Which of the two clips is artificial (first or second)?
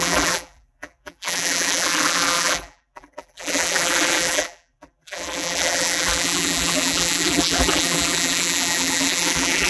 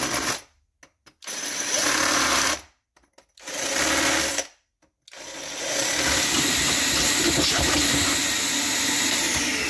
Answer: first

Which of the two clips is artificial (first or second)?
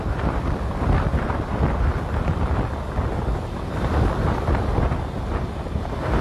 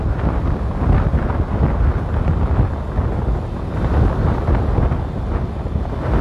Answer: first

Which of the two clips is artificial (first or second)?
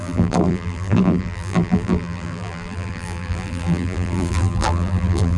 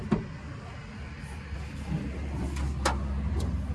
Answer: first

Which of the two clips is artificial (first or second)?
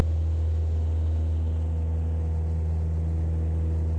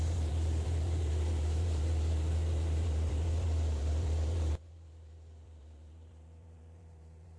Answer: second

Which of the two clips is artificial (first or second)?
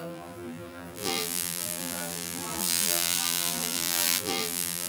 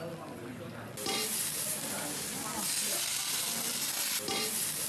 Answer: first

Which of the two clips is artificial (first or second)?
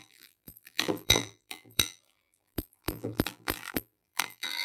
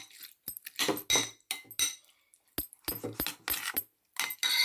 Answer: first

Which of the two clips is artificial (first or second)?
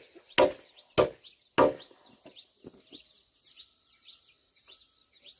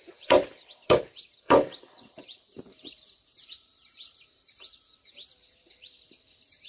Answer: second